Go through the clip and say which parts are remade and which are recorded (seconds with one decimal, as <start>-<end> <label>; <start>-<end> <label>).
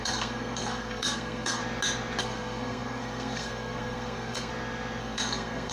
0.0-1.6 remade; 1.6-2.2 recorded; 2.2-4.5 remade; 4.5-5.0 recorded; 5.0-5.7 remade